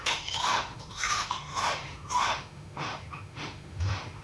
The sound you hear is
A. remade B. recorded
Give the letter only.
A